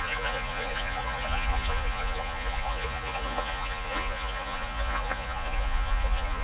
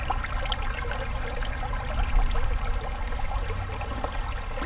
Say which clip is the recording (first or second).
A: second